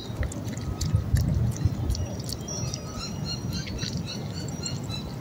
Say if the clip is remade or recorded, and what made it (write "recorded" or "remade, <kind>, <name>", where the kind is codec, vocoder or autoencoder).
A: recorded